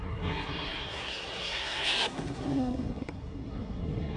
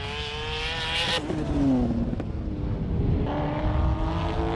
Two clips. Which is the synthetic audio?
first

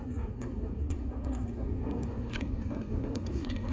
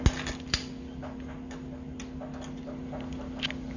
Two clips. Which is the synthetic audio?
first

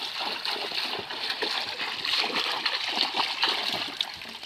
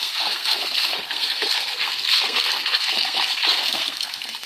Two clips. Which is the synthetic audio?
second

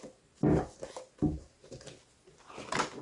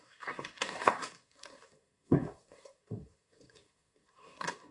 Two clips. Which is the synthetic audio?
second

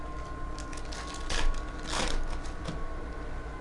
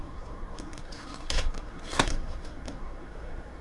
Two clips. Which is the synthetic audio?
second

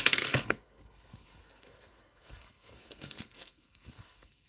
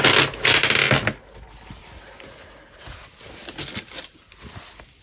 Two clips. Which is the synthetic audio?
first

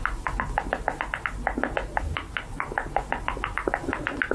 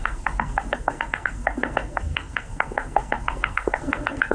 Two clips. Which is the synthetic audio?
second